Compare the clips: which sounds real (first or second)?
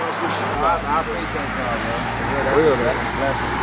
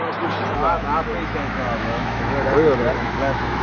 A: first